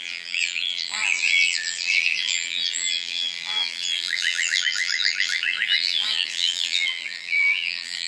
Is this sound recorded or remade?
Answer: remade